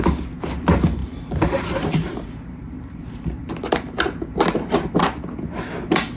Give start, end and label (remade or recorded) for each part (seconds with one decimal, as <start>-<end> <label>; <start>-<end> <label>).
0.0-1.0 recorded; 1.0-4.7 remade; 4.7-6.2 recorded